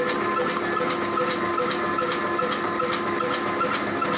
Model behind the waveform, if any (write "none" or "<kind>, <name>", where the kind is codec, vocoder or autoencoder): none